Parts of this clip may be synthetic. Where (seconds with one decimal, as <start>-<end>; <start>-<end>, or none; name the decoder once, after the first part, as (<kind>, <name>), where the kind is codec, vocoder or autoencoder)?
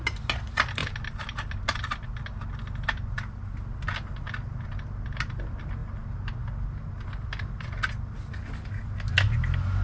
none